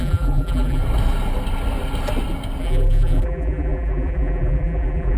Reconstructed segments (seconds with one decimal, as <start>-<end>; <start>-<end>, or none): 0.0-0.8; 2.6-5.2